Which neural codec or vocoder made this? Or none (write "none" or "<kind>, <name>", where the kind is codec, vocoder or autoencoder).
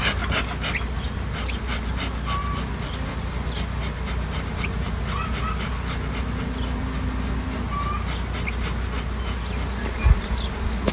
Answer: none